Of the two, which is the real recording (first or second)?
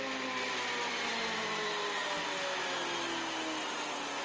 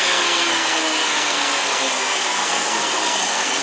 first